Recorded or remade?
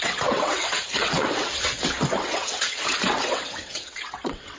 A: remade